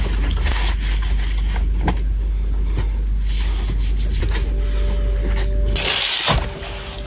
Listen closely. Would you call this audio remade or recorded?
recorded